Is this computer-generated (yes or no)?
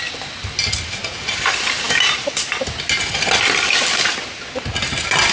no